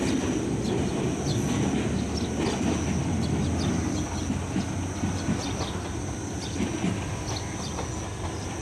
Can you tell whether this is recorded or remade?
recorded